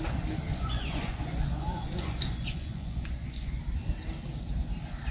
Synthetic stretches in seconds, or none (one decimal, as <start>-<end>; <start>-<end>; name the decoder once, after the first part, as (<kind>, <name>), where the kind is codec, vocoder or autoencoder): 0.5-3.6 (vocoder, Vocos)